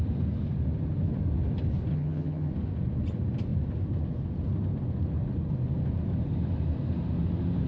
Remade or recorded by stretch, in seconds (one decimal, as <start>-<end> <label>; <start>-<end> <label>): 0.0-1.9 recorded; 1.9-2.5 remade; 2.5-7.7 recorded